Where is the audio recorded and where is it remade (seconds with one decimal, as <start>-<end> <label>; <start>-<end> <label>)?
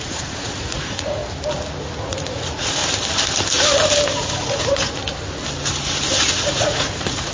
0.0-1.2 remade; 1.2-2.0 recorded; 2.0-2.8 remade; 2.8-4.2 recorded; 4.2-5.0 remade; 5.0-6.3 recorded; 6.3-7.3 remade